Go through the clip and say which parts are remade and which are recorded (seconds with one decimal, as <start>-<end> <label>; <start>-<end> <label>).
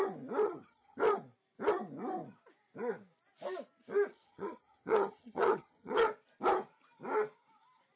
0.0-0.4 recorded; 0.4-1.0 remade; 1.0-4.1 recorded; 4.1-6.0 remade; 6.0-8.0 recorded